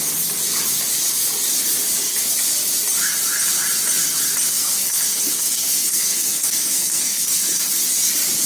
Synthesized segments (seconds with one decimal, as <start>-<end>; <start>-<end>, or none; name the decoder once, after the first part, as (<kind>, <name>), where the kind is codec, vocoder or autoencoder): 4.5-7.7 (codec, SNAC)